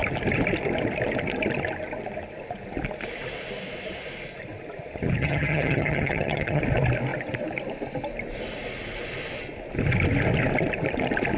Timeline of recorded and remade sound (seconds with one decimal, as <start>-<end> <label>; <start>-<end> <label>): 0.0-5.2 recorded; 5.2-6.6 remade; 6.6-11.4 recorded